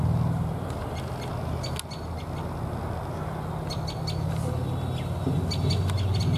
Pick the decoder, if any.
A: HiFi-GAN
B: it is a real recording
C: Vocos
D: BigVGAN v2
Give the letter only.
B